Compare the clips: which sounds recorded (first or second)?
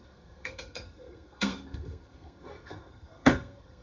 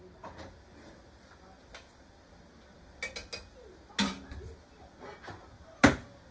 second